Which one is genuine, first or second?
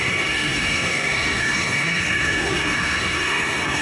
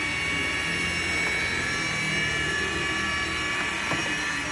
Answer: second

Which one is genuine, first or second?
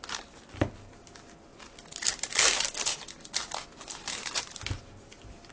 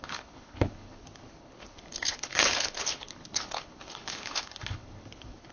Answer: first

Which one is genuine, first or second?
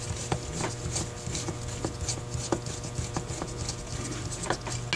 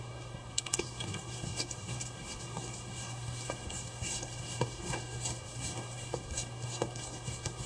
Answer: first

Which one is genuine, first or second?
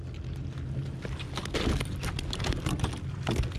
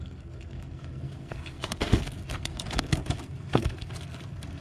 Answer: first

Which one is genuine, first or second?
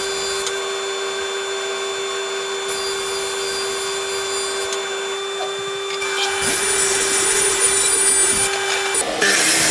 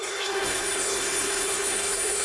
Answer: first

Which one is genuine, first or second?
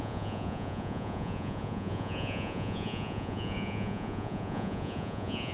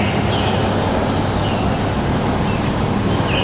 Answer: second